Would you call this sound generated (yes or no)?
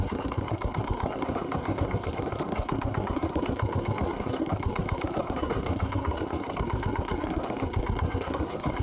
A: yes